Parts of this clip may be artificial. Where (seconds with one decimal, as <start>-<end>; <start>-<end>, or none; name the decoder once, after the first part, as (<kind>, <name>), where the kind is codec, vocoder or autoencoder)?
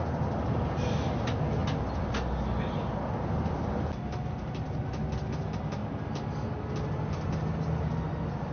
none